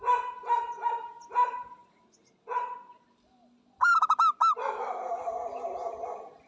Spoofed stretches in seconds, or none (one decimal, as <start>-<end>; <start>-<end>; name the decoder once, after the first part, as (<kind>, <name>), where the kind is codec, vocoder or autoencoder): none